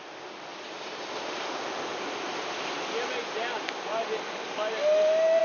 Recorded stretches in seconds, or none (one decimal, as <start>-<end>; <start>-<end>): 0.0-5.4